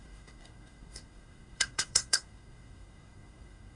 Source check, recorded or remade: remade